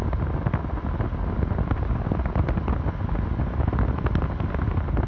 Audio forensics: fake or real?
real